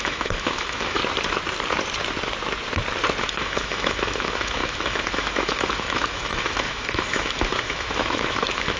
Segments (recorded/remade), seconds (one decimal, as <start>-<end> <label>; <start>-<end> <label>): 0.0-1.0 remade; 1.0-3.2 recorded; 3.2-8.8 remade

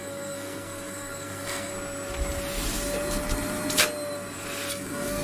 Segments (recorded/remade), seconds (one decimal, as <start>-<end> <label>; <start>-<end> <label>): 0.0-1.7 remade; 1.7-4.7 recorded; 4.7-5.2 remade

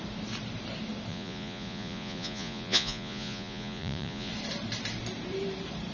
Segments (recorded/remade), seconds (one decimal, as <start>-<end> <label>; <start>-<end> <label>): 0.0-1.1 recorded; 1.1-4.3 remade; 4.3-5.9 recorded

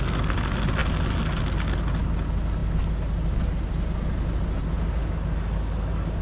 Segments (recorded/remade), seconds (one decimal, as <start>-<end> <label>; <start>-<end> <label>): 0.0-5.0 recorded; 5.0-6.2 remade